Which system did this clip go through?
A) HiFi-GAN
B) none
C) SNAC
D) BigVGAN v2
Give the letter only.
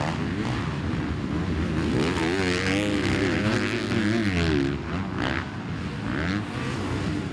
B